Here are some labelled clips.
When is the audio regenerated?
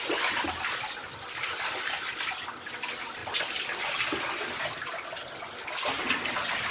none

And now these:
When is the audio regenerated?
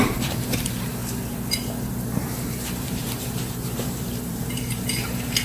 0.0-1.0; 2.2-5.4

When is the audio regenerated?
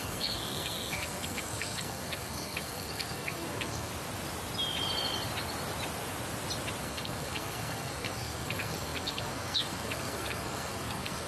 0.0-3.9; 6.8-11.3